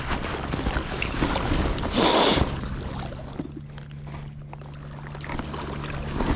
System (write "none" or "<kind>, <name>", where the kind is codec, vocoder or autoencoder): none